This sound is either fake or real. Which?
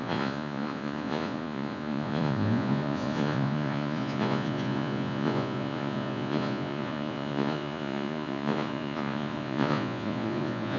fake